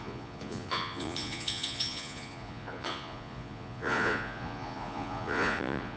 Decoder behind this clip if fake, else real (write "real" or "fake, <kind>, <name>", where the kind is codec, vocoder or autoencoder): fake, vocoder, Vocos